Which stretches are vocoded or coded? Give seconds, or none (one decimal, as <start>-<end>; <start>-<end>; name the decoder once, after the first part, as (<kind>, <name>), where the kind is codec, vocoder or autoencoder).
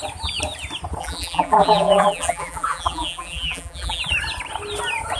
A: 1.0-4.0 (vocoder, BigVGAN v2)